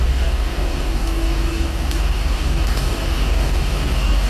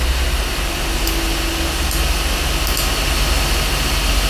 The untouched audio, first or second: second